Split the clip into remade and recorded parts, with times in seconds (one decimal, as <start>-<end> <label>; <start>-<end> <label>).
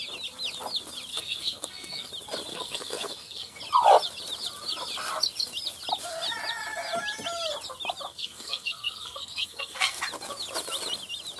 0.0-1.1 recorded; 1.1-2.1 remade; 2.1-2.5 recorded; 2.5-3.6 remade; 3.6-8.1 recorded; 8.1-10.0 remade; 10.0-11.4 recorded